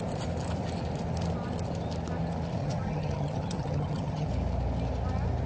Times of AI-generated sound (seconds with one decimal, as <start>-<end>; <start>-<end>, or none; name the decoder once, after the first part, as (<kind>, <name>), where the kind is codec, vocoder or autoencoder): 2.6-4.3 (vocoder, HiFi-GAN)